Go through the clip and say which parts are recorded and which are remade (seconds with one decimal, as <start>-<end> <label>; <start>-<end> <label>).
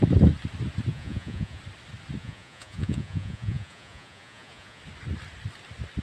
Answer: 0.0-0.9 recorded; 0.9-1.6 remade; 1.6-2.2 recorded; 2.2-4.8 remade; 4.8-6.0 recorded